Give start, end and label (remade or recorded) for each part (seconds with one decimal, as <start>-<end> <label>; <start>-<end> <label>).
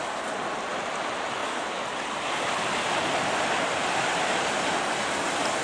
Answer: 0.0-5.6 recorded